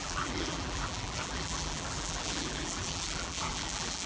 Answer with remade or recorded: remade